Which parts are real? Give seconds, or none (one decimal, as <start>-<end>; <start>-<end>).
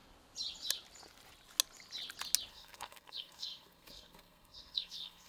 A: 0.0-2.5